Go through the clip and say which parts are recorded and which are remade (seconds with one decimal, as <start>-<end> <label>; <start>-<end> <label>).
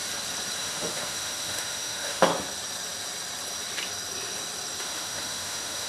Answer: 0.0-0.6 recorded; 0.6-2.3 remade; 2.3-4.8 recorded; 4.8-5.9 remade